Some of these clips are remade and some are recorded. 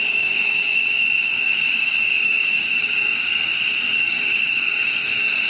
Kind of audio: remade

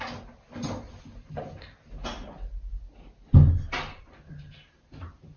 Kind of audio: recorded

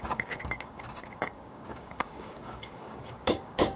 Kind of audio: remade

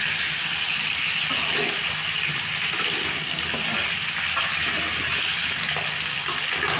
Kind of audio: recorded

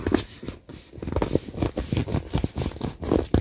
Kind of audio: recorded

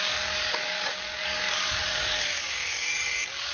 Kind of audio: remade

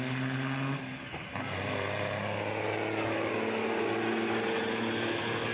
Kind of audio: recorded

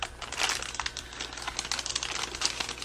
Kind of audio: recorded